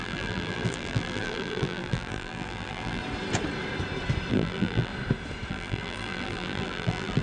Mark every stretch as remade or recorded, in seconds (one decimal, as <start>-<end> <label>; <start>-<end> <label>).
0.0-3.0 remade; 3.0-4.3 recorded; 4.3-4.9 remade; 4.9-5.5 recorded; 5.5-7.2 remade